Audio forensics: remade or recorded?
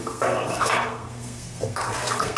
remade